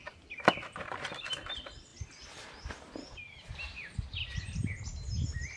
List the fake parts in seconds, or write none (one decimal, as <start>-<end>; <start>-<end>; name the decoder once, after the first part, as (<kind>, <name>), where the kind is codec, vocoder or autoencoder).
none